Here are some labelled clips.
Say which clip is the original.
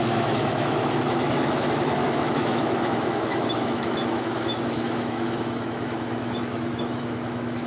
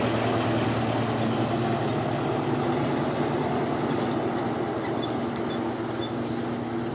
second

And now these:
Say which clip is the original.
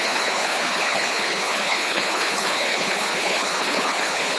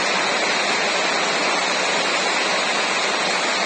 second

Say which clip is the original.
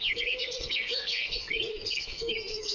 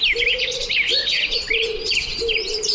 second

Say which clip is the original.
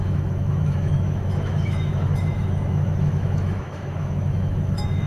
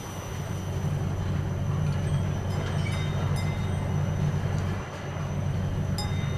second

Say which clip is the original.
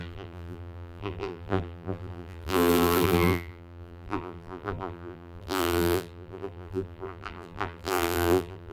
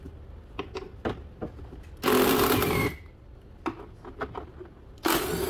second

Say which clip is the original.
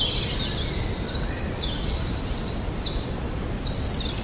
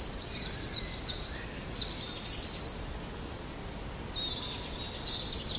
second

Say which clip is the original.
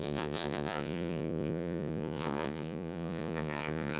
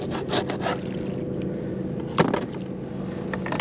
second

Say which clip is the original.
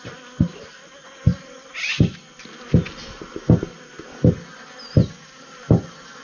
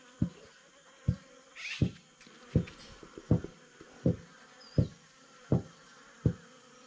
first